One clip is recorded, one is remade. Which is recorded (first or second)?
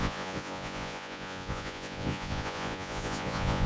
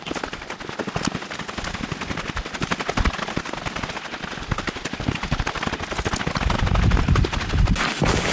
second